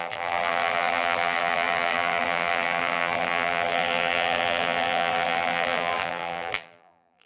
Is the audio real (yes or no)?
no